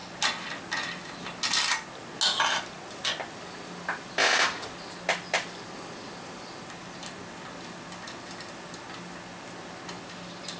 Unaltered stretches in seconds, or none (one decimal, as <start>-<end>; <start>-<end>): 0.0-10.6